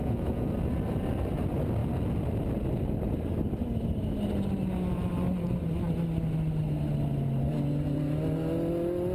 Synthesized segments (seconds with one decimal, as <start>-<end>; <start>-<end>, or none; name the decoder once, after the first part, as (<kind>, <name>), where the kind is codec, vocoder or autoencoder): 0.0-0.5 (vocoder, Vocos)